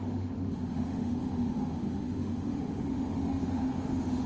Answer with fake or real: fake